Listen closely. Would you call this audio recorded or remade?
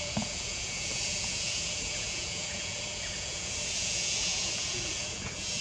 remade